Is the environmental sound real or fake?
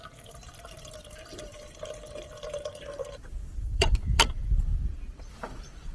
fake